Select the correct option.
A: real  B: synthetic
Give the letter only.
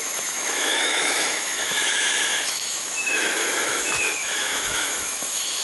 B